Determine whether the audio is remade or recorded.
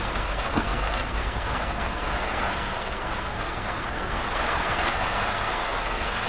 remade